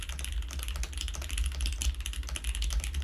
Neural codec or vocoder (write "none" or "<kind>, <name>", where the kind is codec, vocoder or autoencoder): none